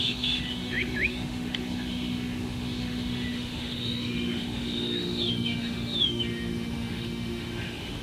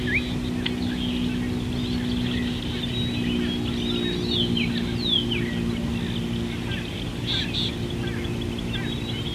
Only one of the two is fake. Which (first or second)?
first